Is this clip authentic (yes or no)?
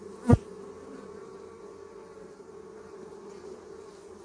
yes